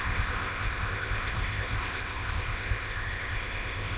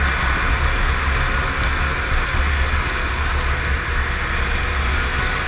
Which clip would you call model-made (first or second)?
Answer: first